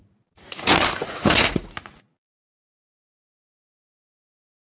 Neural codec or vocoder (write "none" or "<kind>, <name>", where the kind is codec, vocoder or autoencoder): vocoder, Vocos